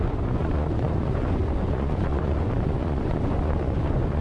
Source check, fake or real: fake